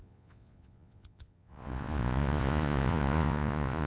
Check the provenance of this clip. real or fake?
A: fake